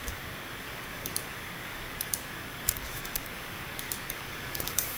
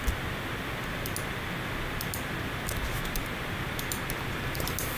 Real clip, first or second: second